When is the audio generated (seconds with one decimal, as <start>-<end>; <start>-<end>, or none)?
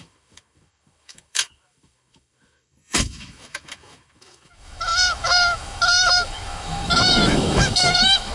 0.0-8.3